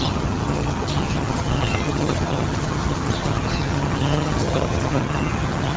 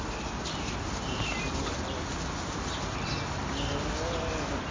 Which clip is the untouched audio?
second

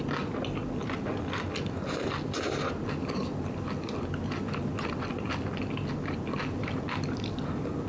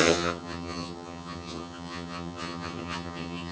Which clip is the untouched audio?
first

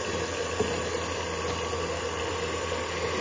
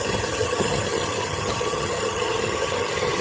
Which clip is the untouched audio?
first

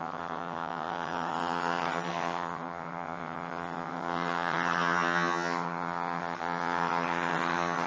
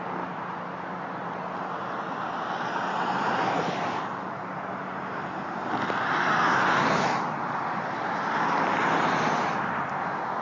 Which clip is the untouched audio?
second